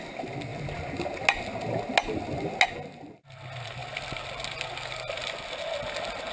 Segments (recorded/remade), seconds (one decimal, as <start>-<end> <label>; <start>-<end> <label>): 0.0-6.3 recorded